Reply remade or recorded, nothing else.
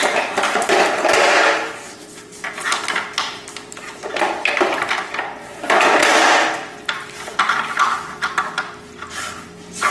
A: recorded